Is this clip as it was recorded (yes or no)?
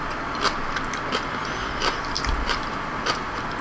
yes